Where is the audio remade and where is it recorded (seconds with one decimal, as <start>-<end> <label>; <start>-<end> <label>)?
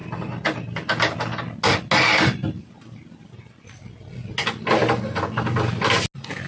0.0-6.5 recorded